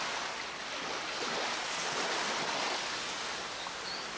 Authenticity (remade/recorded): recorded